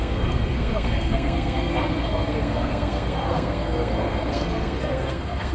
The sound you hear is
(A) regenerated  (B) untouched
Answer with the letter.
A